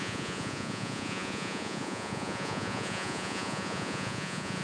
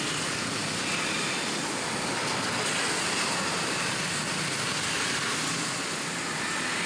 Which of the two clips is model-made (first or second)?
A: first